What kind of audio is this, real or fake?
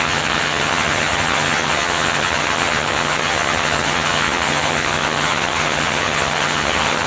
fake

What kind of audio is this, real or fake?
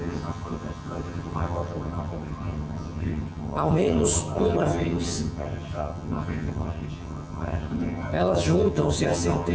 fake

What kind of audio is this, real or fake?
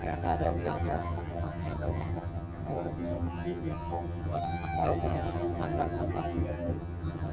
fake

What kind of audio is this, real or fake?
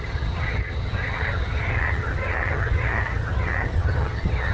fake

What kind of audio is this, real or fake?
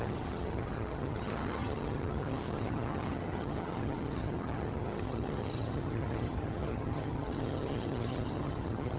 fake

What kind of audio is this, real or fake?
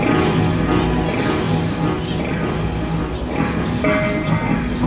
real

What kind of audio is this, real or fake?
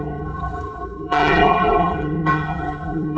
fake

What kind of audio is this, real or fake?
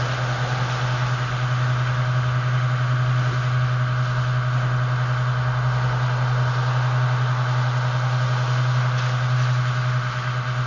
real